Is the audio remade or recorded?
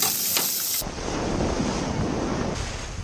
recorded